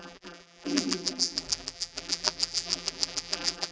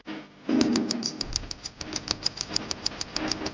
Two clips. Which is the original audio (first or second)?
second